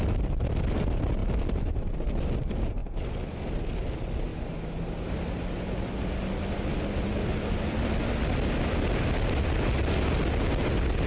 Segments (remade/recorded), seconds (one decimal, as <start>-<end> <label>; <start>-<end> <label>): 0.0-11.1 recorded